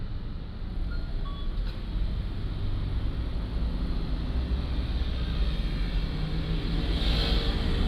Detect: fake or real real